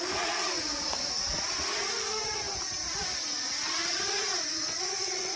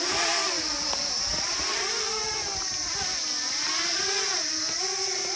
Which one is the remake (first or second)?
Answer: first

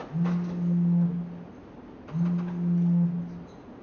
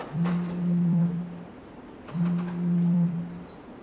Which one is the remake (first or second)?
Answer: second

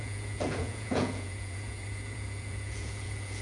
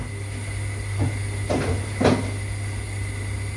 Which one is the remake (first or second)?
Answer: first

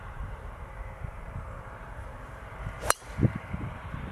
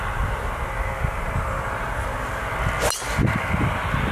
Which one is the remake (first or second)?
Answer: first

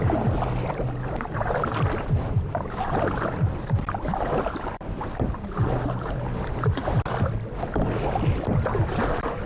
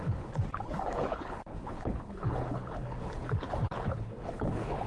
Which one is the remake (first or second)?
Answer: second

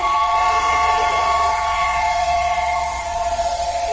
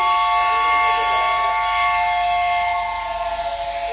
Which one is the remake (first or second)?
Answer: first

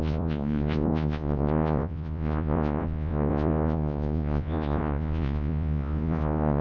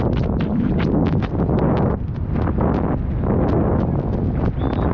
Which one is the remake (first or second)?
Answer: first